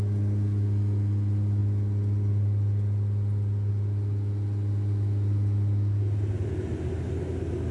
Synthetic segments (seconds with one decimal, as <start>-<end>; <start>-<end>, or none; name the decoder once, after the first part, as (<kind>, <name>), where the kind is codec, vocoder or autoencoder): none